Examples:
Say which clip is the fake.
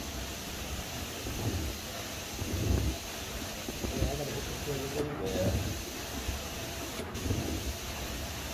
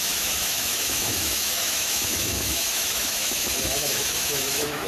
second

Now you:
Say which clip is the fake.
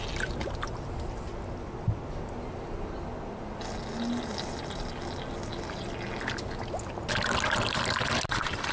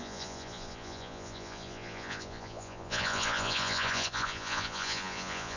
second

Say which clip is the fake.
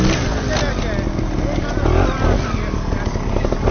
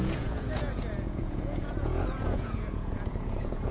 second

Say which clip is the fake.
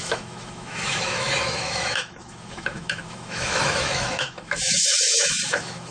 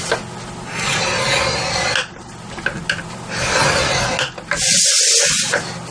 first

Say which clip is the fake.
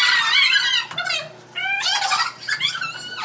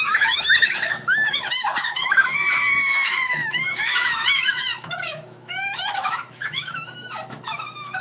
second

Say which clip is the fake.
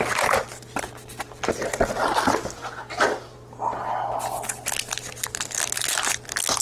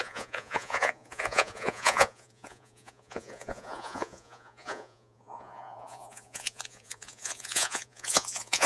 second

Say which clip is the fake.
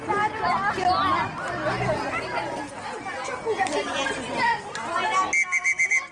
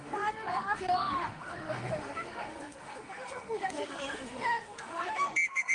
second